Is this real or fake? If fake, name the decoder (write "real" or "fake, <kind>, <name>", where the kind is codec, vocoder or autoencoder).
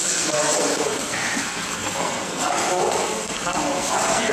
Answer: fake, codec, SNAC